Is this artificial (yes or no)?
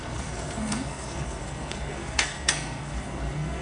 yes